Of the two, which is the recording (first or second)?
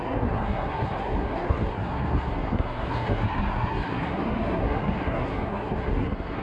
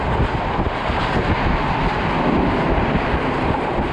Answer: second